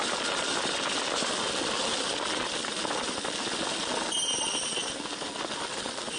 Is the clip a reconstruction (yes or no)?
no